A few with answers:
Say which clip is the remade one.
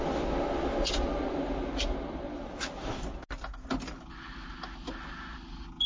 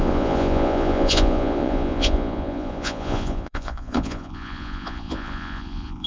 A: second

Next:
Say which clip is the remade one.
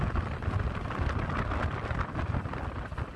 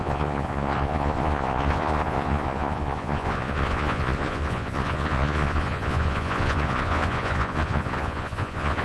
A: second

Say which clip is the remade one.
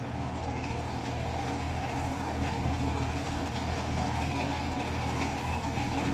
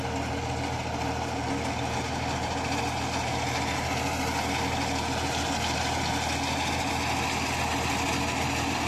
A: first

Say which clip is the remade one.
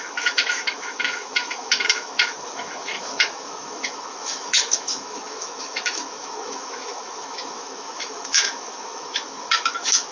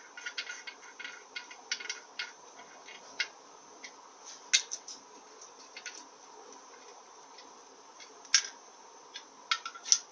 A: first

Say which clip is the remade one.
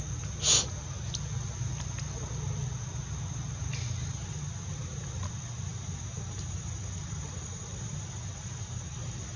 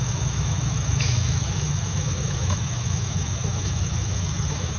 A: second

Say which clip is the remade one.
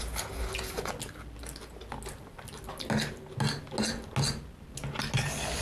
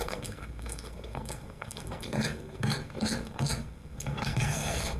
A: second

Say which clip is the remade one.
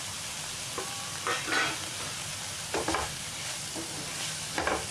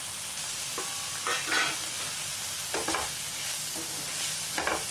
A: first